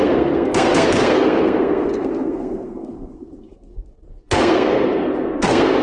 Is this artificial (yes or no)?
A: yes